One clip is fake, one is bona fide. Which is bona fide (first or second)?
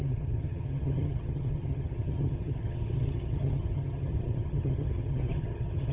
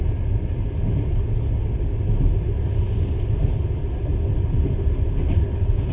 second